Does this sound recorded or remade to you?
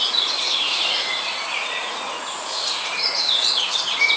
remade